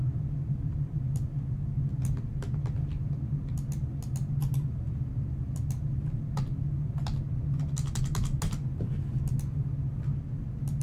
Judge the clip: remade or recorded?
recorded